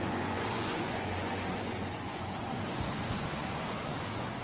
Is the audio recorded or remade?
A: remade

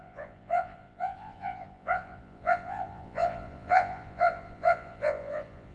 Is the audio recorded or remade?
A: remade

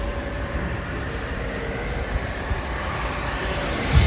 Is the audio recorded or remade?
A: remade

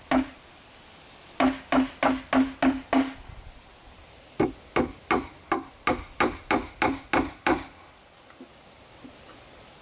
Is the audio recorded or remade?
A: recorded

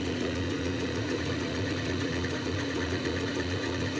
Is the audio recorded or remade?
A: remade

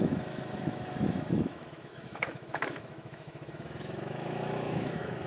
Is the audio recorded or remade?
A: remade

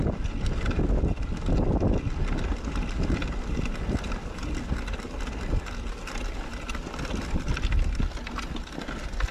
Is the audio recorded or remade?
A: recorded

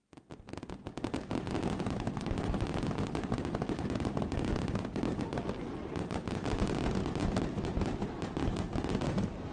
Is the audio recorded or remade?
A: recorded